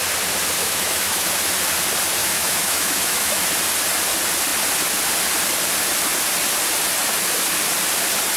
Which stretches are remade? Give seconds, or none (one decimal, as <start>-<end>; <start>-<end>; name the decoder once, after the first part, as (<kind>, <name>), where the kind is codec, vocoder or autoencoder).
0.6-1.3 (autoencoder, DAC-VAE); 2.2-3.4